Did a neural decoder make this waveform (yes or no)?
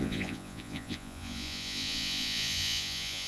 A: yes